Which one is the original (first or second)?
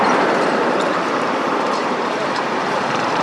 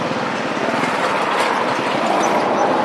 second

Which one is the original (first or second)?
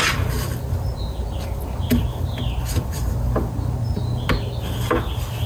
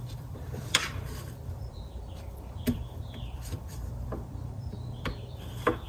first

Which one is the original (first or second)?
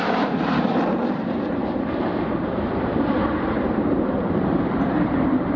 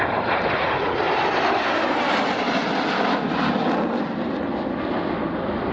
second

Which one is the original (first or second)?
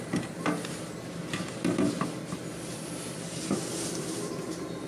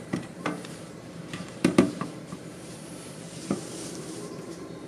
first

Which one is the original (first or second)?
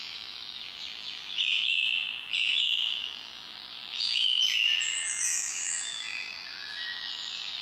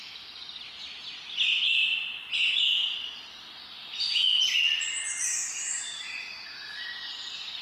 second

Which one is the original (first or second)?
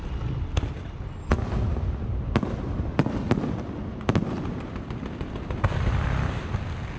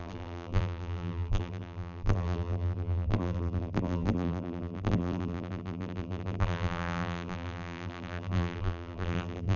first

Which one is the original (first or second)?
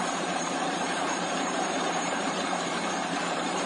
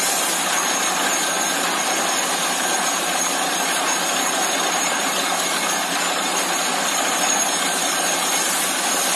second